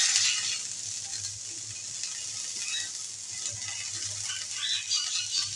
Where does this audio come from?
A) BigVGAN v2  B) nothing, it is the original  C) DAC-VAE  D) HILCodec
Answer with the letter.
B